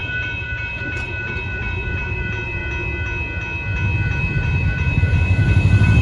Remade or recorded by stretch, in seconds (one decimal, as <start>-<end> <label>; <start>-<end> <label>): 0.0-2.6 remade; 2.6-4.2 recorded; 4.2-6.0 remade